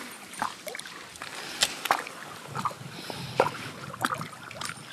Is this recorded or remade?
remade